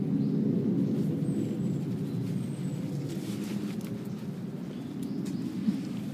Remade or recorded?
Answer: recorded